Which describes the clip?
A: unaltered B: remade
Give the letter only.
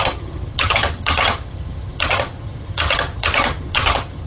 B